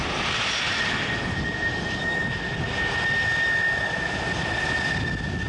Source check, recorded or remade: recorded